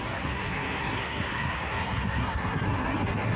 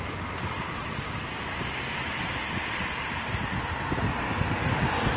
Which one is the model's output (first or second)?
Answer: first